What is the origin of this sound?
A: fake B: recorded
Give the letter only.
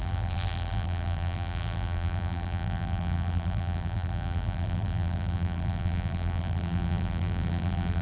A